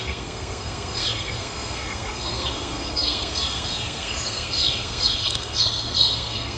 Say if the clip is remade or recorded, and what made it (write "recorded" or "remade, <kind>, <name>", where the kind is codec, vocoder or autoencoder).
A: remade, codec, SNAC